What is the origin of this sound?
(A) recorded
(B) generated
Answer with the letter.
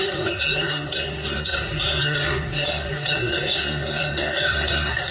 B